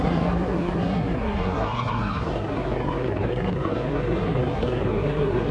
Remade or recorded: remade